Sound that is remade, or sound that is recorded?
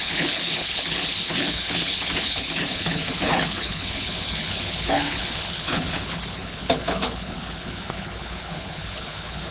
remade